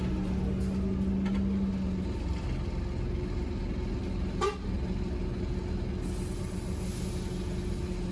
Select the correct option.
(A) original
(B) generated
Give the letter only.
A